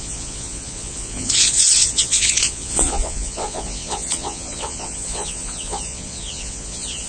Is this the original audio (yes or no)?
no